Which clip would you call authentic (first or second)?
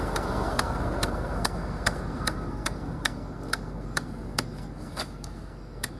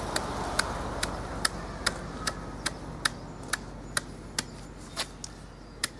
second